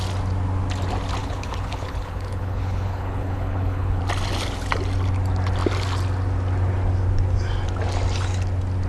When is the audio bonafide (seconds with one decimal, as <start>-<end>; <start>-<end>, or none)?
0.0-1.2; 4.0-8.9